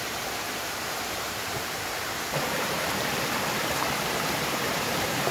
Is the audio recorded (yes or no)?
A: no